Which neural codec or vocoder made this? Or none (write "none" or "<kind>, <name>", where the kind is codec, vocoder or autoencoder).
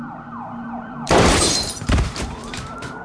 vocoder, BigVGAN v2